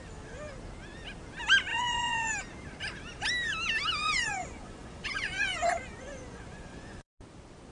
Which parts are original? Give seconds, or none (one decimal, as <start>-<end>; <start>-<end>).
0.0-1.7; 2.3-4.0; 7.2-7.7